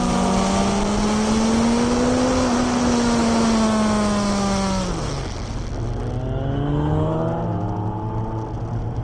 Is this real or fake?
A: real